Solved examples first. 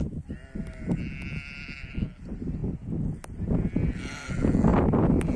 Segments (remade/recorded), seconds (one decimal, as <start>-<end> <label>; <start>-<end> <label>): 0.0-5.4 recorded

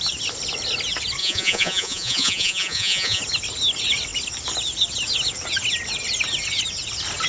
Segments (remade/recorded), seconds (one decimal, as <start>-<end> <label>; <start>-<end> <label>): 0.0-1.2 recorded; 1.2-3.2 remade; 3.2-7.3 recorded

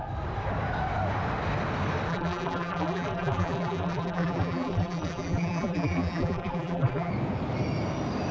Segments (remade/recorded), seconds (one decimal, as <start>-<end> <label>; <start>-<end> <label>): 0.0-2.1 recorded; 2.1-7.1 remade; 7.1-8.3 recorded